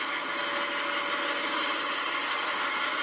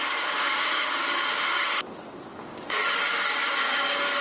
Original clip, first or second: first